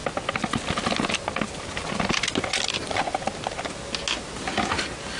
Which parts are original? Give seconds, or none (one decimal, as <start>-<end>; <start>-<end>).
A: 0.0-5.2